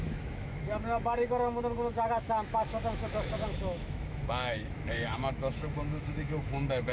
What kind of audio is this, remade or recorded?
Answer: remade